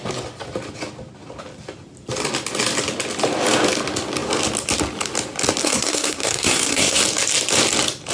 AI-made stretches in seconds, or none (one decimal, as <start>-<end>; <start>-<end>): 5.6-7.0